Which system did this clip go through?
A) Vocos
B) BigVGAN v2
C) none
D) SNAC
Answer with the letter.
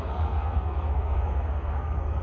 D